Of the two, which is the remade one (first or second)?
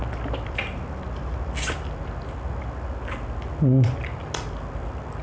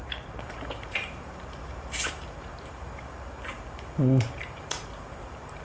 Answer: second